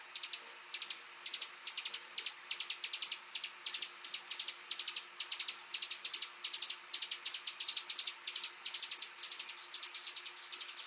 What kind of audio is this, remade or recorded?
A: recorded